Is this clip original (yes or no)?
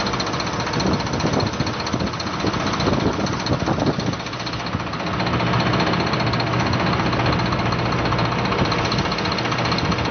yes